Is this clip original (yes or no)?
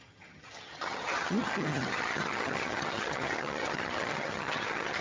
no